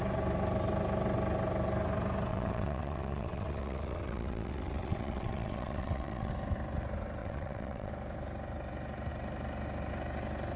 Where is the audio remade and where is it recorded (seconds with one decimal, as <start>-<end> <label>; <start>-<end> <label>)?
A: 0.0-2.3 recorded; 2.3-6.3 remade; 6.3-7.2 recorded; 7.2-7.9 remade; 7.9-10.6 recorded